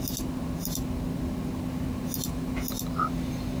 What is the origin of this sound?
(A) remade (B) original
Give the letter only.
B